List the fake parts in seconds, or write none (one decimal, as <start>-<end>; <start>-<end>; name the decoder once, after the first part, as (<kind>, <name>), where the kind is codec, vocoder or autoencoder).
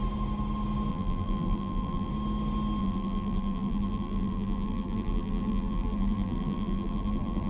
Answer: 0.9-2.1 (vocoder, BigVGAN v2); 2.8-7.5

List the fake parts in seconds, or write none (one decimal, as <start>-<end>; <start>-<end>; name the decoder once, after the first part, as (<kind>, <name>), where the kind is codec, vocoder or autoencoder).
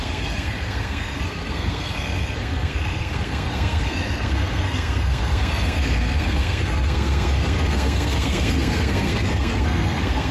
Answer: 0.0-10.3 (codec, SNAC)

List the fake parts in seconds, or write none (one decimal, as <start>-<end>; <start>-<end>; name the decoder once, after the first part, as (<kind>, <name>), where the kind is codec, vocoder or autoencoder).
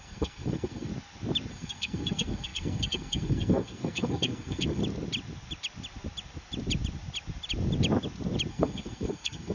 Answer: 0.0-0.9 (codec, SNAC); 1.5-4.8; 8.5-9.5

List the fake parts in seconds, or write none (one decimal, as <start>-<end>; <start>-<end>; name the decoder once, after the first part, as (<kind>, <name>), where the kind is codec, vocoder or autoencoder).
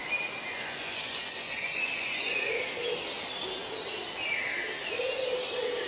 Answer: 0.5-2.6 (vocoder, Vocos)